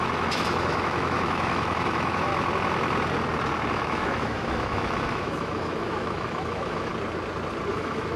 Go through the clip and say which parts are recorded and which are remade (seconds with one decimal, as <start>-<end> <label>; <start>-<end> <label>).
0.0-2.3 remade; 2.3-3.7 recorded; 3.7-6.9 remade; 6.9-7.7 recorded; 7.7-8.2 remade